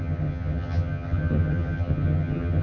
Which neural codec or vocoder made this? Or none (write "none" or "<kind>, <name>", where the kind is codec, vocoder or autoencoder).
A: vocoder, HiFi-GAN